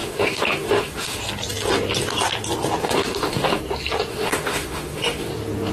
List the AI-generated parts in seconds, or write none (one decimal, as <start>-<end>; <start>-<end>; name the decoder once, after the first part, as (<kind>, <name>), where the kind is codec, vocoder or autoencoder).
0.0-1.2 (autoencoder, DAC-VAE); 2.8-3.6; 4.1-5.3